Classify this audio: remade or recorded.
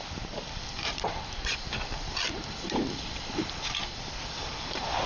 remade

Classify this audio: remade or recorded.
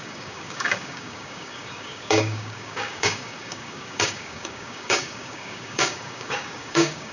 remade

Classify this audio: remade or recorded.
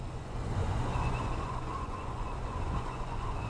remade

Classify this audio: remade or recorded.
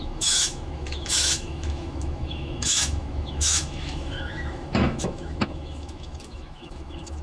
remade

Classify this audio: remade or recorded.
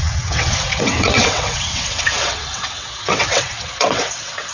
remade